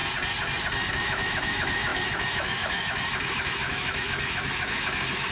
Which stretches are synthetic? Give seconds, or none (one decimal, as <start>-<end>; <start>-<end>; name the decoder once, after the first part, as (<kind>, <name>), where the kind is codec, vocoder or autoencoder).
0.9-5.3 (autoencoder, DAC-VAE)